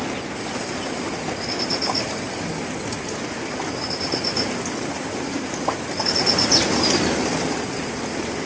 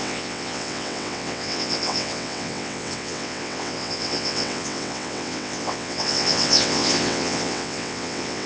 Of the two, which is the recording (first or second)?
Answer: first